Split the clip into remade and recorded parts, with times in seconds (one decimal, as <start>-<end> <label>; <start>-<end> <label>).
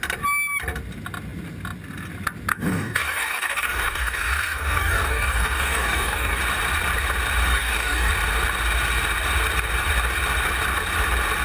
0.0-2.5 recorded; 2.5-6.4 remade; 6.4-7.5 recorded; 7.5-8.1 remade; 8.1-11.4 recorded